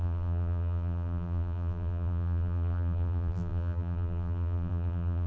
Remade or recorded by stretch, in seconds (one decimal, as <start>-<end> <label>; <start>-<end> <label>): 0.0-5.3 remade

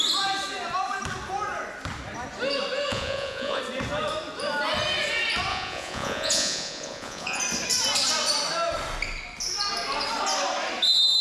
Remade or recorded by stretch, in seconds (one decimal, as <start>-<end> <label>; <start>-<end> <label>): 0.0-2.9 recorded; 2.9-3.6 remade; 3.6-5.5 recorded; 5.5-7.4 remade; 7.4-11.2 recorded

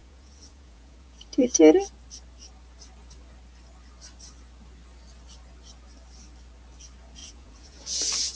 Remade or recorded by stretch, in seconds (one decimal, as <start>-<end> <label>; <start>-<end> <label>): 0.0-1.6 remade; 1.6-7.2 recorded; 7.2-8.4 remade

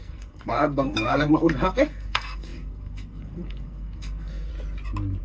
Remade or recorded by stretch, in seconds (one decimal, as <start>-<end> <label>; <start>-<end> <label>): 0.0-4.5 remade; 4.5-5.2 recorded

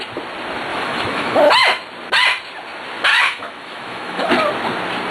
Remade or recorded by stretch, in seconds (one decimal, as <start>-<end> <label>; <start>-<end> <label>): 0.0-0.7 recorded; 0.7-1.4 remade; 1.4-3.1 recorded; 3.1-4.3 remade; 4.3-5.1 recorded

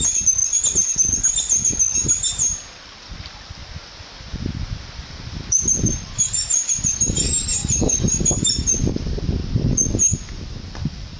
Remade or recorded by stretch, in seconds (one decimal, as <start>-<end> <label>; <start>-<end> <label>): 0.0-0.4 remade; 0.4-0.9 recorded; 0.9-3.6 remade; 3.6-4.2 recorded; 4.2-9.4 remade; 9.4-10.0 recorded; 10.0-11.2 remade